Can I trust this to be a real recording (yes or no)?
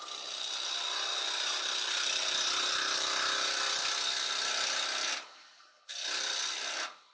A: no